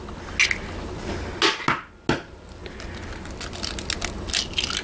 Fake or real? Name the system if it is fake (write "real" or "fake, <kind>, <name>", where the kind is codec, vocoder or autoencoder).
real